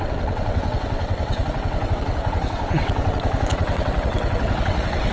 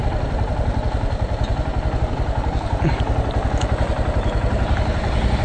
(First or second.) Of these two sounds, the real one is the second